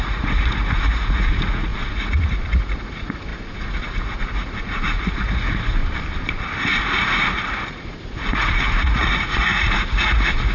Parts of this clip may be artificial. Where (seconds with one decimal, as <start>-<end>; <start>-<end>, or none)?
0.0-5.8; 6.8-10.5